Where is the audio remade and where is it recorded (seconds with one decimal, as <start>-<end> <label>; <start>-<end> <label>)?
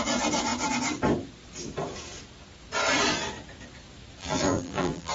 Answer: 0.0-4.2 recorded; 4.2-5.1 remade